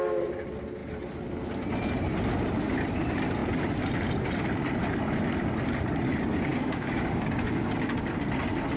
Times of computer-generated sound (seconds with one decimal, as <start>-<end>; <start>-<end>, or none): 6.5-8.1